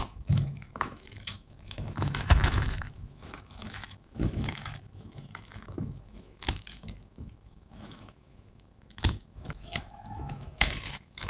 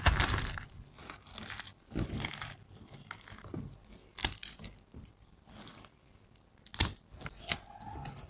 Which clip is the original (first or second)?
second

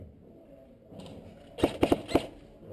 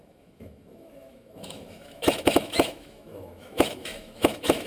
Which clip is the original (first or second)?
first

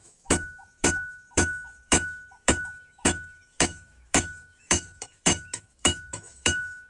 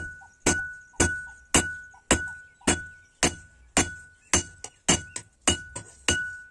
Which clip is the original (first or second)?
second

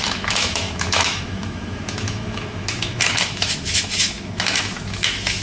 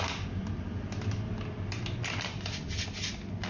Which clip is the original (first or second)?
second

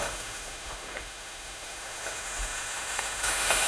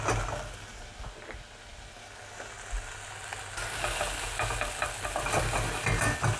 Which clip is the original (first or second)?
second